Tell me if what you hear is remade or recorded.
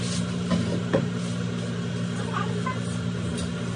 recorded